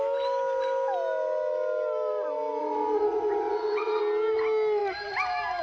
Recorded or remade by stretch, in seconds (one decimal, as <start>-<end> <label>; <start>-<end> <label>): 0.0-2.6 recorded; 2.6-4.0 remade; 4.0-5.6 recorded